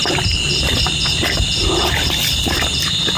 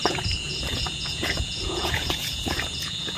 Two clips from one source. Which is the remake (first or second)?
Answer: second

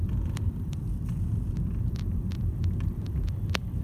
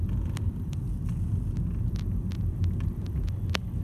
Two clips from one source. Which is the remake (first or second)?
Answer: first